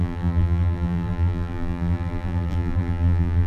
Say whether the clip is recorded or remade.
remade